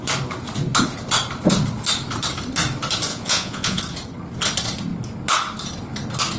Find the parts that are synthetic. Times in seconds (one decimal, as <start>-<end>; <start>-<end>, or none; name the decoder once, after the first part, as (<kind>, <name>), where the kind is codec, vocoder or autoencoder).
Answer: 3.1-3.8 (vocoder, Vocos)